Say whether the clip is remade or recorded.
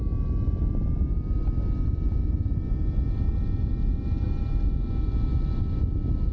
recorded